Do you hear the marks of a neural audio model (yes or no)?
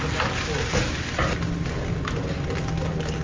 no